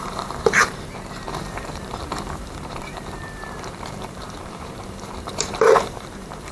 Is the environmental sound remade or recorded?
remade